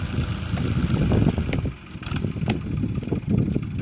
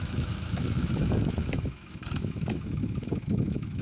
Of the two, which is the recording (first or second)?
first